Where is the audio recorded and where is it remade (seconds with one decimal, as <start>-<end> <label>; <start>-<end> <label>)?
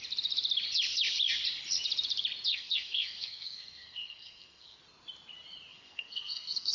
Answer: 0.0-2.5 recorded; 2.5-4.8 remade; 4.8-5.7 recorded; 5.7-6.7 remade